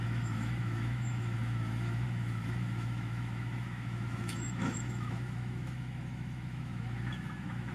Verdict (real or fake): fake